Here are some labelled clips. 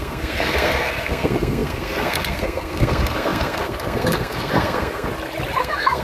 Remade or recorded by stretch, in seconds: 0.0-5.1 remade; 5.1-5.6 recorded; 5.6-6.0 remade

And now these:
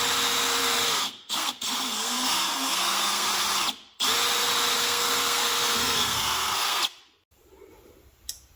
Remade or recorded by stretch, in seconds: 0.0-0.6 recorded; 0.6-3.3 remade; 3.3-4.8 recorded; 4.8-6.8 remade; 6.8-8.6 recorded

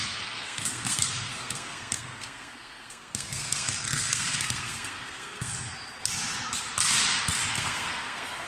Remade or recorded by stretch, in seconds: 0.0-5.5 remade; 5.5-7.5 recorded; 7.5-8.5 remade

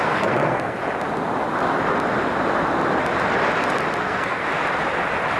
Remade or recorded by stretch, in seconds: 0.0-0.8 remade; 0.8-4.0 recorded; 4.0-4.5 remade; 4.5-5.4 recorded

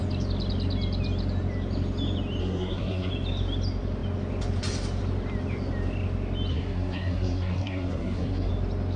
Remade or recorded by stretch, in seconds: 0.0-2.4 recorded; 2.4-3.1 remade; 3.1-6.5 recorded; 6.5-8.5 remade; 8.5-9.0 recorded

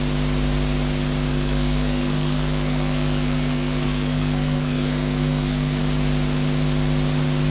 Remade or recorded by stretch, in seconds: 0.0-1.3 recorded; 1.3-5.8 remade; 5.8-7.5 recorded